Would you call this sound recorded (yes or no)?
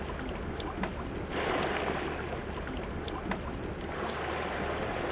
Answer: yes